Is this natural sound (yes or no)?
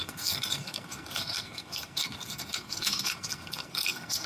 no